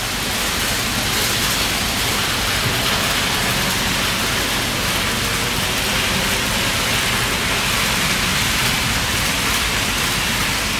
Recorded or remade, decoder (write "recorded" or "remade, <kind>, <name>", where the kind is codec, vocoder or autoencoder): recorded